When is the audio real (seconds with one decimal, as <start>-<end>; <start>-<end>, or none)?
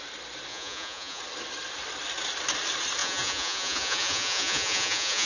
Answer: 0.0-0.5; 1.2-3.0